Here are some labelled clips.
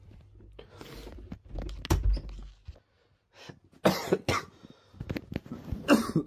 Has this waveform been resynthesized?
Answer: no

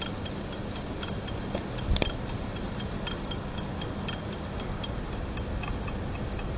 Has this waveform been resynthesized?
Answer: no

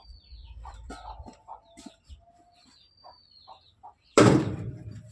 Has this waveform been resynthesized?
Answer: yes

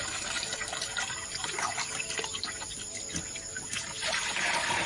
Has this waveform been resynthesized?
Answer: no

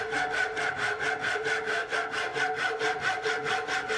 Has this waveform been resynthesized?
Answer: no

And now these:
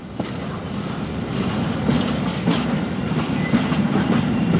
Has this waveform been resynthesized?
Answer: yes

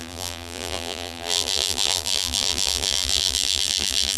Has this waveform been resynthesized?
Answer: yes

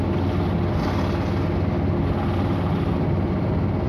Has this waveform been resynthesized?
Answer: no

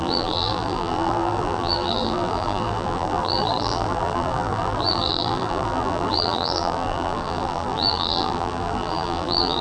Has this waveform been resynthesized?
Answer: yes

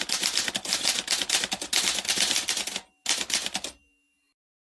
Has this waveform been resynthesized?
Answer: no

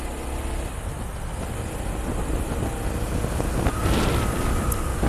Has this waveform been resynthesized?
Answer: no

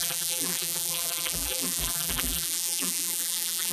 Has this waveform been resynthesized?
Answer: yes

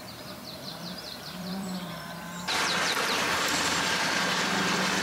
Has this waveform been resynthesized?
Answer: yes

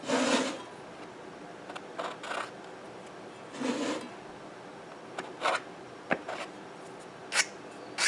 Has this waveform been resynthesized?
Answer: no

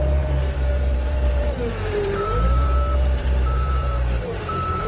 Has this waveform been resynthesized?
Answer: yes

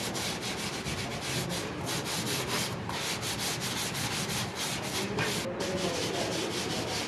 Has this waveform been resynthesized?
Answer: no